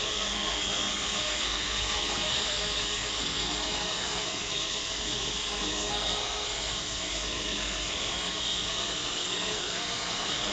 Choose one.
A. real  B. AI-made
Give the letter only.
B